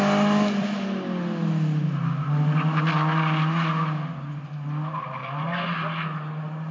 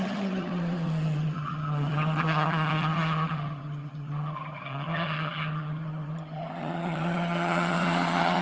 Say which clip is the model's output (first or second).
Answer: second